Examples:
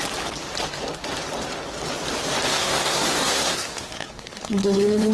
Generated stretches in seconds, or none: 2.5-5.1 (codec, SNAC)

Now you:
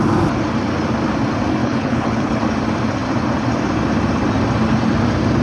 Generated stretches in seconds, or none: 1.6-2.4 (codec, HILCodec)

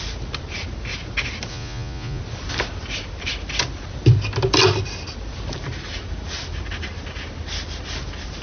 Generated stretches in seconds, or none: 1.5-2.2 (vocoder, Vocos)

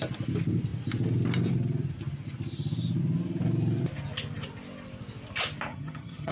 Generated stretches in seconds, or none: 5.7-6.3 (vocoder, HiFi-GAN)

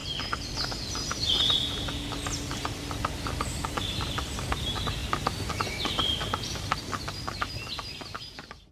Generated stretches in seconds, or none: none